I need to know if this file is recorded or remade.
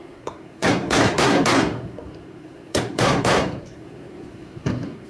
remade